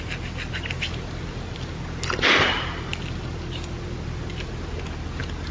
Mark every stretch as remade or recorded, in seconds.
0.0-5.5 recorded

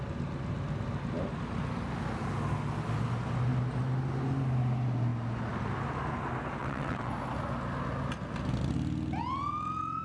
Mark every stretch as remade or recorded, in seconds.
0.0-6.6 recorded; 6.6-7.1 remade; 7.1-10.0 recorded

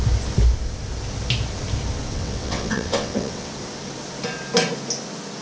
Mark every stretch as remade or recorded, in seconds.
0.0-2.1 recorded; 2.1-3.5 remade; 3.5-5.4 recorded

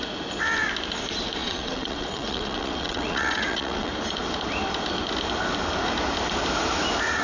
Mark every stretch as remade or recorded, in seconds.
0.0-1.4 recorded; 1.4-3.9 remade; 3.9-7.2 recorded

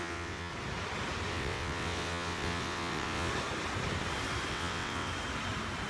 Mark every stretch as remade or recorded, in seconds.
0.0-0.5 remade; 0.5-1.3 recorded; 1.3-3.3 remade; 3.3-4.5 recorded; 4.5-5.1 remade; 5.1-5.9 recorded

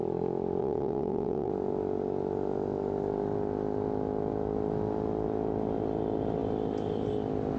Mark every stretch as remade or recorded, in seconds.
0.0-0.6 recorded; 0.6-1.5 remade; 1.5-7.6 recorded

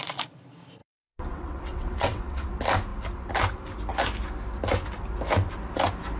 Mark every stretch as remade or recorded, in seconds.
0.0-0.8 recorded; 0.8-2.5 remade; 2.5-6.2 recorded

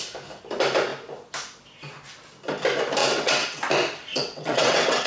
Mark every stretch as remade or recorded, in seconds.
0.0-3.0 recorded; 3.0-3.6 remade; 3.6-4.1 recorded; 4.1-5.1 remade